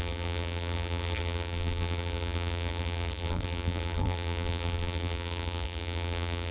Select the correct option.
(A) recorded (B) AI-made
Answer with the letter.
B